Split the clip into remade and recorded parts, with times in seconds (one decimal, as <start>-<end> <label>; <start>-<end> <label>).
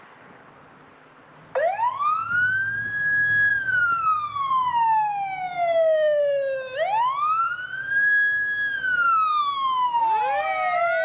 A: 0.0-3.5 recorded; 3.5-4.7 remade; 4.7-7.4 recorded; 7.4-10.0 remade; 10.0-11.0 recorded